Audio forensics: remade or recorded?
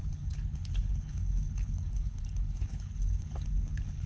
remade